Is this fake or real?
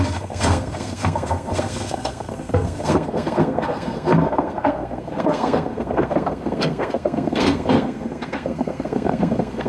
fake